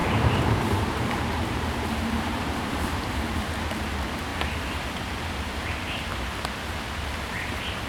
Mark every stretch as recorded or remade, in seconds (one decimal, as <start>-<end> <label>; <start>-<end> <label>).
0.0-4.3 remade; 4.3-5.0 recorded; 5.0-6.1 remade; 6.1-7.5 recorded; 7.5-7.9 remade